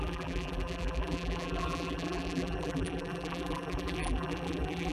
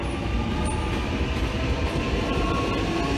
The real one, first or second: second